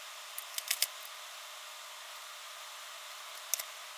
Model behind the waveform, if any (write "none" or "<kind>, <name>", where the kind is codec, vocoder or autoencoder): none